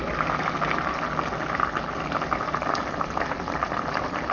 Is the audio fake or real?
real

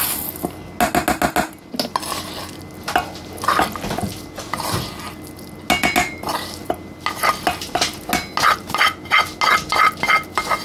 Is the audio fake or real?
real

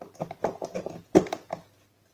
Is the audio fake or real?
real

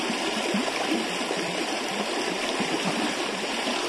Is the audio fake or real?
fake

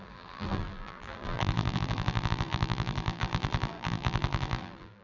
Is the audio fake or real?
fake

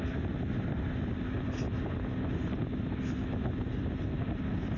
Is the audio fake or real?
real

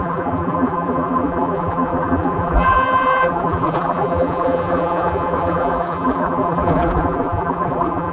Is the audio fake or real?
fake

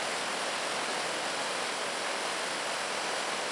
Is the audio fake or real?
fake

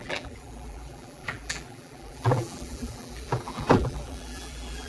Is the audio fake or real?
fake